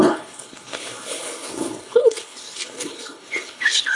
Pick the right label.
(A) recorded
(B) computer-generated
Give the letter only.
B